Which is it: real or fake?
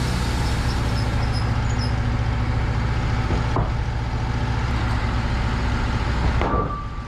real